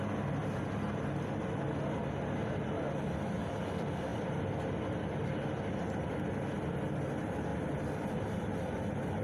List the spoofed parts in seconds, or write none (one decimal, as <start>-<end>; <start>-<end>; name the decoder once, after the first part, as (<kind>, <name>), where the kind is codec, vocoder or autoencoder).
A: none